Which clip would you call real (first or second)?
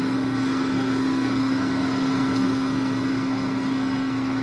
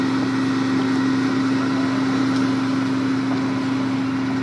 second